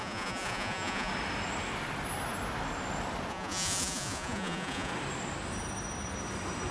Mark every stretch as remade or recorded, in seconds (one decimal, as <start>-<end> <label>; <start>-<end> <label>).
0.0-1.1 remade; 1.1-3.3 recorded; 3.3-4.9 remade; 4.9-6.7 recorded